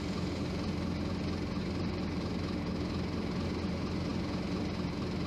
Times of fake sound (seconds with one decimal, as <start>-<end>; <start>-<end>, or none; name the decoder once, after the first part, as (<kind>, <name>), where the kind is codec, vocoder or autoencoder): 1.6-2.3 (vocoder, BigVGAN v2)